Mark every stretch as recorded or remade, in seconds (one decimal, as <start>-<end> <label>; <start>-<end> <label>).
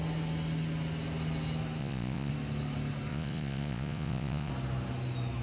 0.0-1.8 recorded; 1.8-2.3 remade; 2.3-3.1 recorded; 3.1-4.5 remade; 4.5-5.4 recorded